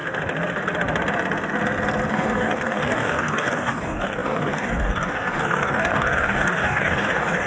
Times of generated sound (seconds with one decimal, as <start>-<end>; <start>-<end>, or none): 2.1-7.5